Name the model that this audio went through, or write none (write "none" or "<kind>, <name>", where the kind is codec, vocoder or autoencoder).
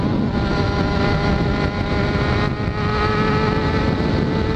none